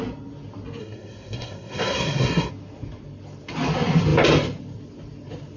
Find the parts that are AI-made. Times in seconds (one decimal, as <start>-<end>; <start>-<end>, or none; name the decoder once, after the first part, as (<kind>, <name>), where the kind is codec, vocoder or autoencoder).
0.8-2.5 (codec, SNAC)